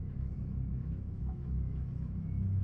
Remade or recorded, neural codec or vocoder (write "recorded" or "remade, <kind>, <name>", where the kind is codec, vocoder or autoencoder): remade, autoencoder, DAC-VAE